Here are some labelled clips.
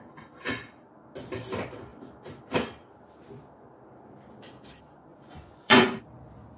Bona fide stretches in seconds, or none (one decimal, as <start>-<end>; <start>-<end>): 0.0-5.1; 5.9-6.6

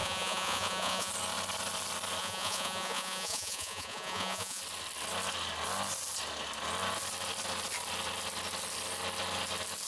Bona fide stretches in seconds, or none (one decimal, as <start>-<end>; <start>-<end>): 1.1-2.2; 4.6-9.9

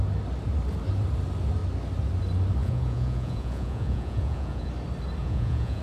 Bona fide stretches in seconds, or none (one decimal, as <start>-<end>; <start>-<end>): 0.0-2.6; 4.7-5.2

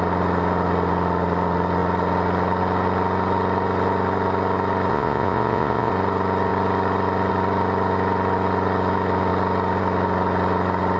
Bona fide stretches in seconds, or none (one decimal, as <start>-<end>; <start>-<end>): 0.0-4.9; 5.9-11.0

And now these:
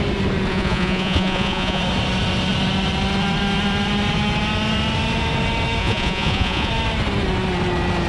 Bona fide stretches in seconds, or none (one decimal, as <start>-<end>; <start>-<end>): 0.0-0.5; 1.8-5.8; 6.7-8.1